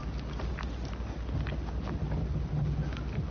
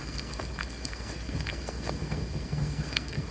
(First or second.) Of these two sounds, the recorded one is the first